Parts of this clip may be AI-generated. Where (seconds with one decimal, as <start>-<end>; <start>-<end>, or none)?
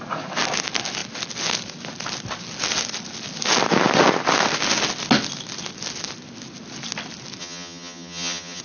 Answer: 7.4-8.6